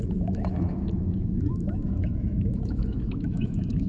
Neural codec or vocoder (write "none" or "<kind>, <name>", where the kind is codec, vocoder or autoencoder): autoencoder, DAC-VAE